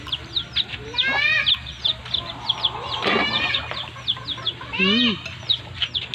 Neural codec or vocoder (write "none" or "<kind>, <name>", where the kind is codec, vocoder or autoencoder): none